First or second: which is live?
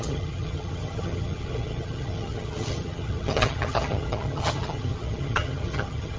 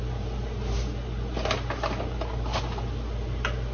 second